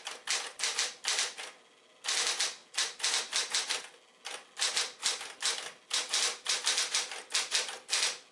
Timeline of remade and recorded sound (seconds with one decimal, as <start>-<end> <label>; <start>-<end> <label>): 0.0-8.3 recorded